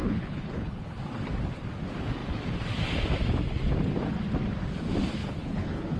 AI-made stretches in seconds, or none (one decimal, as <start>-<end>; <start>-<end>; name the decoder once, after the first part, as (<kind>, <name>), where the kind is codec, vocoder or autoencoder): 0.0-1.0 (codec, HILCodec); 5.2-6.0